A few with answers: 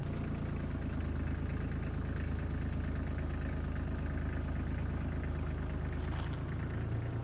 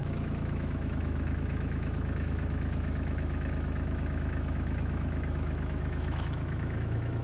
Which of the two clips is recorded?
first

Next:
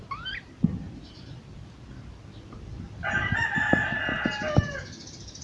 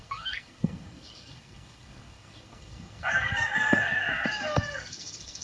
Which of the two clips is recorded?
first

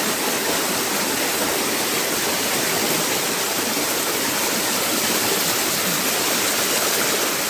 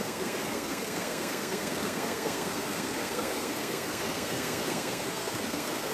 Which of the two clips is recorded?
first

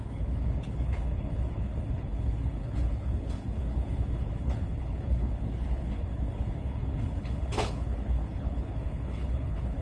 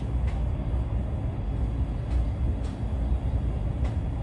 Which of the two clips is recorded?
second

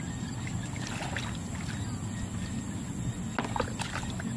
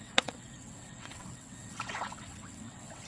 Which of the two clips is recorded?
first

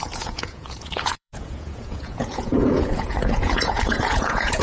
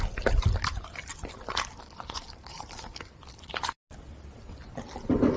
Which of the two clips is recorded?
second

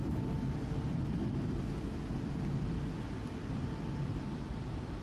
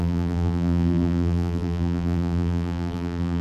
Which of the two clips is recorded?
first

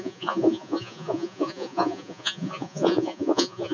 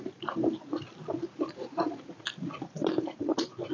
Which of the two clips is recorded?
second